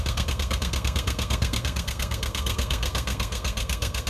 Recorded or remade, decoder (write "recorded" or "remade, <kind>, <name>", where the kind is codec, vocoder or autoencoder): remade, codec, SNAC